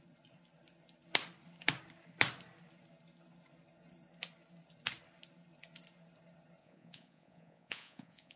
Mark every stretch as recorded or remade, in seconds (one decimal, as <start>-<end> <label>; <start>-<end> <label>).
0.0-6.6 recorded; 6.6-8.4 remade